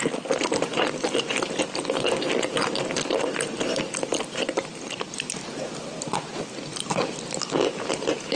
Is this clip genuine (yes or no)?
yes